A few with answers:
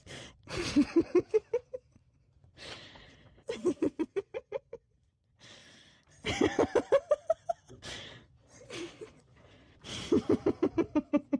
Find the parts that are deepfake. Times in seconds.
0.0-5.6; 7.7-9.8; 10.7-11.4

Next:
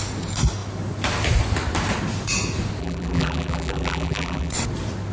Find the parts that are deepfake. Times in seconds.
2.8-4.5

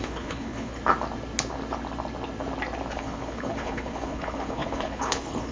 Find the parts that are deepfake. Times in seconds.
0.0-0.7; 2.9-5.5

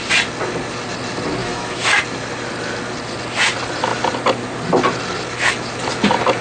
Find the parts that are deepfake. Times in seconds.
1.4-2.0

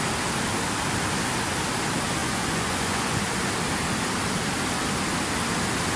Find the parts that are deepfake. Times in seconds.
2.2-3.2

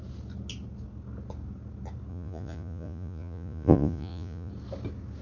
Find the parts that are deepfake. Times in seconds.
2.1-4.5